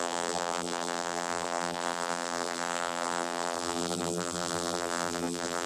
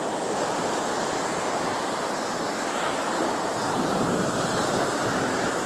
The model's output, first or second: first